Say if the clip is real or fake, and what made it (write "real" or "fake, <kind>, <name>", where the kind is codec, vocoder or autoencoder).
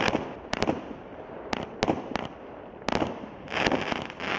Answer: real